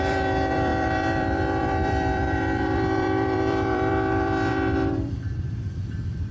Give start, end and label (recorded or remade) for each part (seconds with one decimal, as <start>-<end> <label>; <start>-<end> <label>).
0.0-6.3 remade